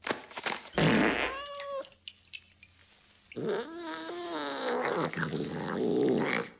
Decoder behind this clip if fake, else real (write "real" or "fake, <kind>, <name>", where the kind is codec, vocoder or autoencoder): real